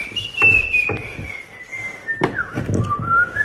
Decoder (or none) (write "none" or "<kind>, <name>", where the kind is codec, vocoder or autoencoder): none